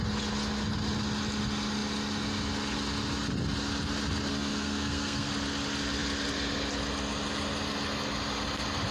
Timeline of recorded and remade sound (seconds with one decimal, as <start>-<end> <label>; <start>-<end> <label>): 0.0-4.3 recorded; 4.3-5.3 remade; 5.3-8.9 recorded